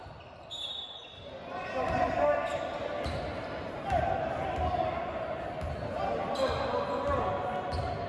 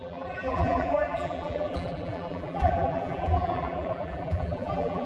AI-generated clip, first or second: second